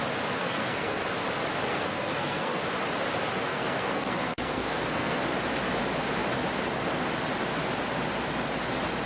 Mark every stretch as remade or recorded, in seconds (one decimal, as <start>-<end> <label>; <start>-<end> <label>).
0.0-0.4 recorded; 0.4-1.0 remade; 1.0-1.7 recorded; 1.7-2.6 remade; 2.6-3.5 recorded; 3.5-5.2 remade; 5.2-9.1 recorded